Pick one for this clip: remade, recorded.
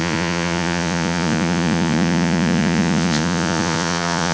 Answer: remade